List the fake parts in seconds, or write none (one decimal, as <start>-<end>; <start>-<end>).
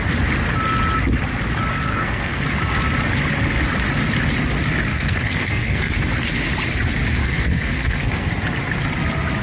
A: 1.9-2.5; 4.9-5.9; 7.2-8.3